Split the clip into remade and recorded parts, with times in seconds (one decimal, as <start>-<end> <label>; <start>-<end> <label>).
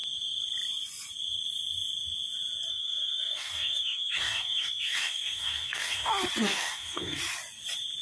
0.0-2.7 recorded; 2.7-6.1 remade; 6.1-6.5 recorded; 6.5-7.2 remade; 7.2-8.0 recorded